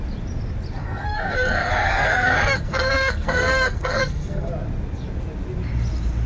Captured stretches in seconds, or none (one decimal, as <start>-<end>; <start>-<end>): 0.0-0.8; 4.5-6.3